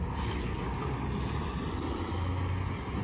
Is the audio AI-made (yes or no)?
no